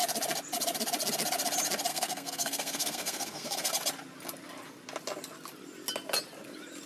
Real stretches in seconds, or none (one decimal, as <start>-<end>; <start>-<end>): 0.0-1.9; 3.7-6.9